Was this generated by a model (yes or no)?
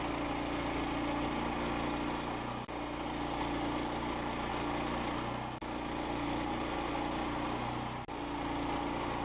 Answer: no